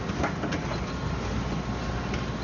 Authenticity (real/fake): real